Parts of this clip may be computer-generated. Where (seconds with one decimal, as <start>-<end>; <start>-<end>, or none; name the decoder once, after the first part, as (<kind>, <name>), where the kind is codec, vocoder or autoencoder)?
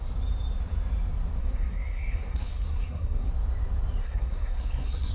1.4-3.3 (codec, SNAC); 4.0-5.1